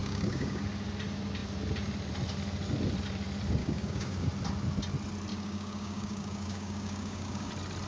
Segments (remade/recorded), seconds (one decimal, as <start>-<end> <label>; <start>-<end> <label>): 0.0-0.6 remade; 0.6-3.6 recorded; 3.6-4.3 remade; 4.3-5.3 recorded; 5.3-7.5 remade; 7.5-7.9 recorded